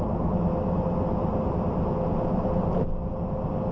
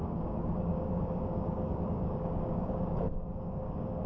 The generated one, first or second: second